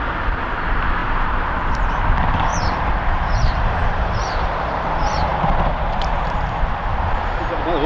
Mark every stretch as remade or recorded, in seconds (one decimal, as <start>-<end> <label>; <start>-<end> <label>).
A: 0.0-1.0 recorded; 1.0-1.7 remade; 1.7-2.5 recorded; 2.5-7.1 remade; 7.1-7.9 recorded